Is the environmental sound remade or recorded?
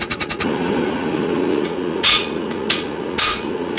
remade